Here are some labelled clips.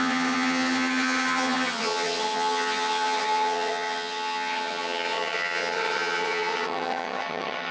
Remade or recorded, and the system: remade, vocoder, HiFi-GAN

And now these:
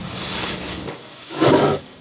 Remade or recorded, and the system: remade, codec, DAC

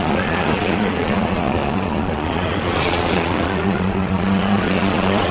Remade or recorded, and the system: remade, vocoder, Vocos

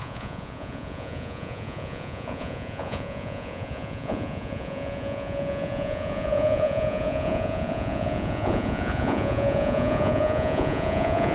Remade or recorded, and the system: remade, vocoder, Vocos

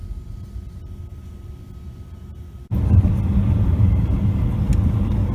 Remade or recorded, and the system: recorded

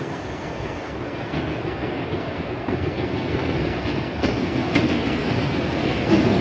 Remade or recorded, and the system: remade, codec, SNAC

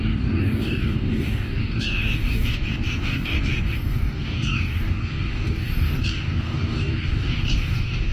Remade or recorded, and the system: remade, codec, DAC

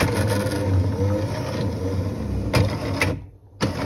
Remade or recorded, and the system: recorded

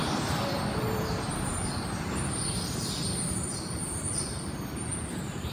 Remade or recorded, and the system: remade, vocoder, BigVGAN v2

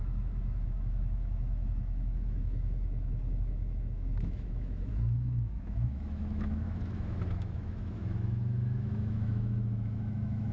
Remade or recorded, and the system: remade, autoencoder, DAC-VAE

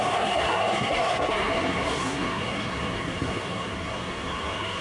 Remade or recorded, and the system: remade, codec, SNAC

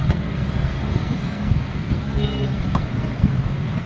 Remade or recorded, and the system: remade, codec, SNAC